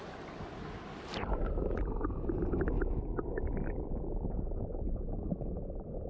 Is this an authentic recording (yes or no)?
yes